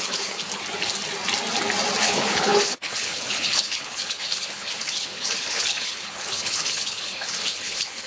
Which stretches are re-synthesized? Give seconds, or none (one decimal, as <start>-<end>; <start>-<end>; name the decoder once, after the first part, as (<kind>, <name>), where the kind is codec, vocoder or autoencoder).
0.0-0.6 (codec, HILCodec); 2.0-8.1